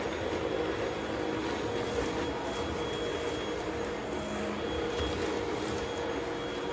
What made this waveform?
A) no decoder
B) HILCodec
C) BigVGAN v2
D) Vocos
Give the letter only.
A